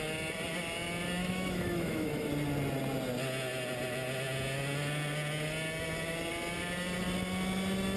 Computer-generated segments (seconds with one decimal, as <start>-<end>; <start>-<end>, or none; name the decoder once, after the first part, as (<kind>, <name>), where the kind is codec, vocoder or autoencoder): 1.2-2.3 (autoencoder, DAC-VAE)